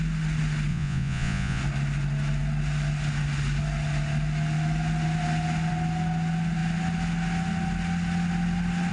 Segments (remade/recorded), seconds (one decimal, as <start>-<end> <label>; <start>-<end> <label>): 0.0-0.7 recorded; 0.7-1.6 remade; 1.6-8.9 recorded